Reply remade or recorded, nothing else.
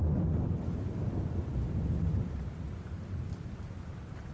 recorded